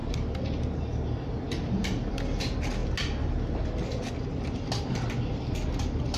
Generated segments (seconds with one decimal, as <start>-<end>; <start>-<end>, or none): none